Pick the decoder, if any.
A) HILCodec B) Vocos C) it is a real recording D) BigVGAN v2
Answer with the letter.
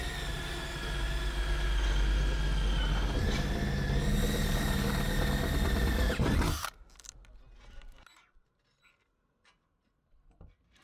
C